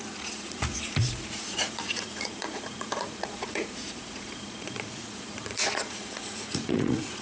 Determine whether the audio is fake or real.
fake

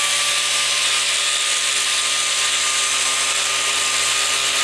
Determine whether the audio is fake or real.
real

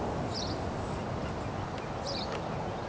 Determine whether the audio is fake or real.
real